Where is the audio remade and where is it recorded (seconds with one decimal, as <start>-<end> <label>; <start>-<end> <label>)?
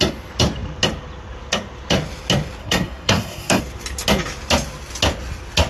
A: 0.0-2.6 recorded; 2.6-3.6 remade; 3.6-5.7 recorded